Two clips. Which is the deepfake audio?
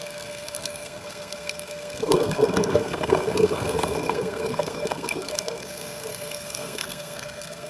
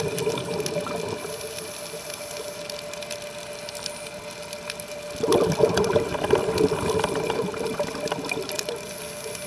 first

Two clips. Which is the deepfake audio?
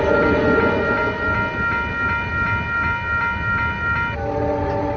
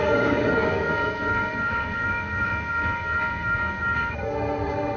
second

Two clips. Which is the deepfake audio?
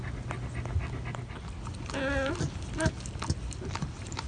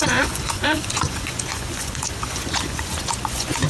second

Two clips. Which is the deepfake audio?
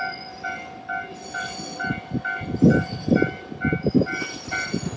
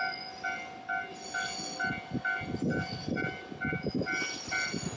first